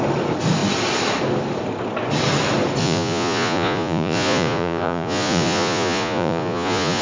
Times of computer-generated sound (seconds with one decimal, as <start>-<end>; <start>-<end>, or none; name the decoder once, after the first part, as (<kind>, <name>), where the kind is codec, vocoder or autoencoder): 2.8-7.0 (vocoder, Vocos)